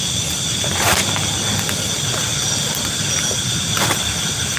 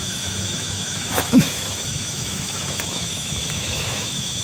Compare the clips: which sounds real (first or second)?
first